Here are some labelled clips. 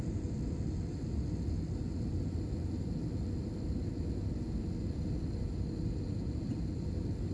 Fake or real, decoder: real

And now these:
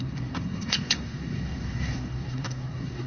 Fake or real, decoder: fake, codec, SNAC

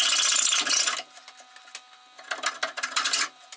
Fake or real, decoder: real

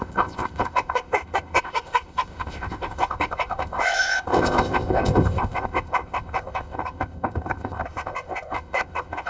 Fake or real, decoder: fake, codec, ZipCodec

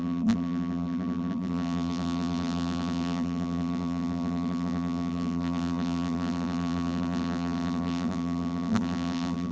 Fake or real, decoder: fake, vocoder, BigVGAN v2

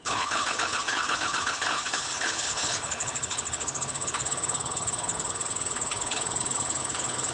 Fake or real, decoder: fake, codec, HILCodec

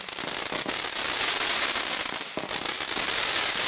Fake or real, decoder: real